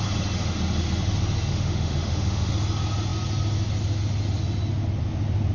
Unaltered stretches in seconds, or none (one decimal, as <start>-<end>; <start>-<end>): 0.0-1.5; 2.5-5.5